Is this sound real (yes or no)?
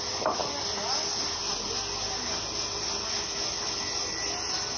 yes